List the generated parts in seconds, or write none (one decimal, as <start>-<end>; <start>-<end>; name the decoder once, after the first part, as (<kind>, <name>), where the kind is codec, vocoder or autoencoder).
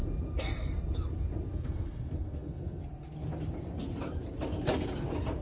1.5-2.8 (codec, SNAC)